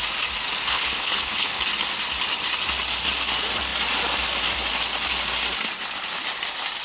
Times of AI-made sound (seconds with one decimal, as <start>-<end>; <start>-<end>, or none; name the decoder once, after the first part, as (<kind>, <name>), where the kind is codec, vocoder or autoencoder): 0.6-1.6 (codec, HILCodec)